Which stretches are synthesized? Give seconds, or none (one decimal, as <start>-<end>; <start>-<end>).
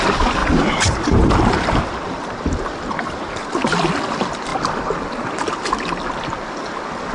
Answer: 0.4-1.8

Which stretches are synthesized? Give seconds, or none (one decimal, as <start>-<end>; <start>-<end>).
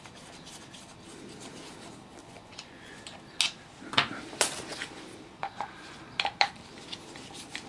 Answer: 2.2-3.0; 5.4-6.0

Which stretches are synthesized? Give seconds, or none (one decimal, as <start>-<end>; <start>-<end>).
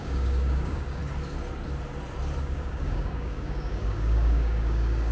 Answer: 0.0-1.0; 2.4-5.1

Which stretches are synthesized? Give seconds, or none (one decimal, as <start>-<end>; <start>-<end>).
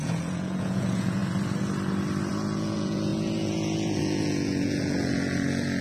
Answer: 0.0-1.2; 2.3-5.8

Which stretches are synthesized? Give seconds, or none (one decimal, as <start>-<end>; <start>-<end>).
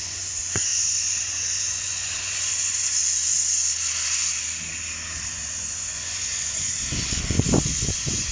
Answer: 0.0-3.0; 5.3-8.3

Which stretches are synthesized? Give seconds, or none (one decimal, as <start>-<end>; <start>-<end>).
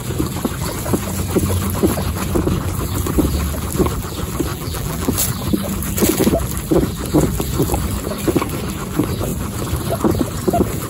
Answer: 4.5-5.1